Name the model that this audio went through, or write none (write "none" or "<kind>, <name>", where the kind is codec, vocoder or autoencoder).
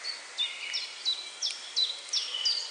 none